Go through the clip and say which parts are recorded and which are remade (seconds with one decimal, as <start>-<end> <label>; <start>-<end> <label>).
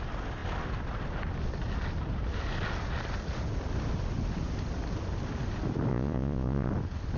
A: 0.0-5.9 recorded; 5.9-6.7 remade; 6.7-7.2 recorded